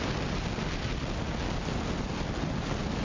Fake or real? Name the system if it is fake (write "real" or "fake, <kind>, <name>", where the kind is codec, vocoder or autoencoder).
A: real